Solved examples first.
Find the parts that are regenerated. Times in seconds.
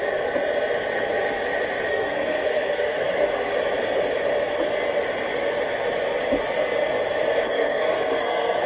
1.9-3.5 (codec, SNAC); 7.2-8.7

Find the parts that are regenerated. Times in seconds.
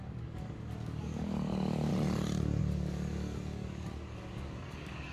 0.0-1.9 (codec, DAC); 2.6-5.1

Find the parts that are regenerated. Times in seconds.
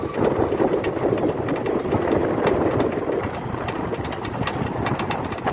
2.2-5.5 (vocoder, BigVGAN v2)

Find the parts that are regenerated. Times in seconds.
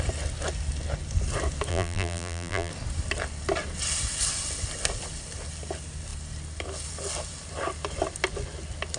1.7-2.7 (vocoder, BigVGAN v2)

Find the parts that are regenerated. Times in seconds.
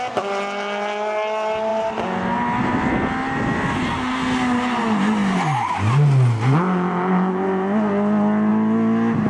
none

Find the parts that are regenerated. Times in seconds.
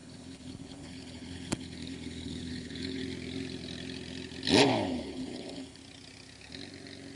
0.0-3.0 (codec, HILCodec); 4.7-5.8